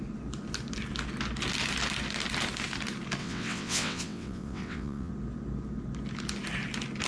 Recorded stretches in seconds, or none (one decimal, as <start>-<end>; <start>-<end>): 0.0-3.2; 5.1-7.1